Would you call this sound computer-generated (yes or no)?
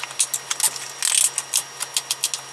no